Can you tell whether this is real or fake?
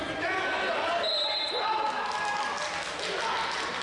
real